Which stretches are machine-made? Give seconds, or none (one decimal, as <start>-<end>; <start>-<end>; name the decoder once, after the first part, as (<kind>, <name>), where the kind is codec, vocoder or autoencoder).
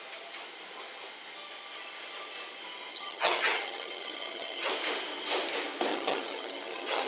2.9-4.7 (vocoder, HiFi-GAN); 5.9-7.1